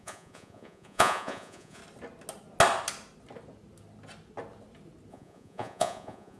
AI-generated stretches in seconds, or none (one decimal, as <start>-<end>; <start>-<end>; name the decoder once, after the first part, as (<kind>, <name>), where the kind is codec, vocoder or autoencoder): 0.0-1.8 (vocoder, Vocos); 5.1-6.4